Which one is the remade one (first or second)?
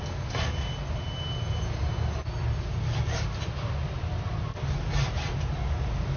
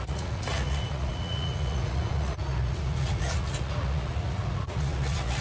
second